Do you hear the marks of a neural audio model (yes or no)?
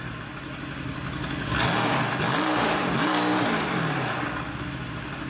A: no